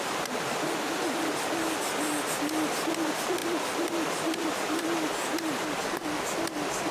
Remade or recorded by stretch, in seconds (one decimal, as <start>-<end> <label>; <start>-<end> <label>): 0.0-6.9 recorded